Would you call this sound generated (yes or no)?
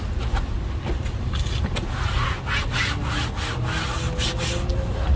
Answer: no